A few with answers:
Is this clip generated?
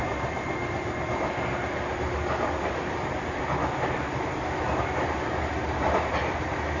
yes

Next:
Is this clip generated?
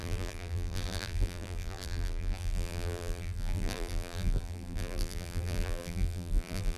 yes